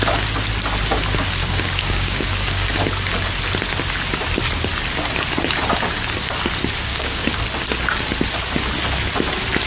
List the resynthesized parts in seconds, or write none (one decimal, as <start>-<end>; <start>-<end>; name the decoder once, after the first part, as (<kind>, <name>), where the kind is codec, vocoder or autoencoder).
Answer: 1.4-2.7 (codec, DAC); 6.9-7.4